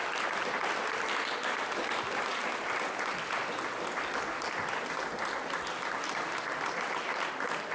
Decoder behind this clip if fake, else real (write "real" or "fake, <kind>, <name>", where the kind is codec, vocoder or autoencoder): real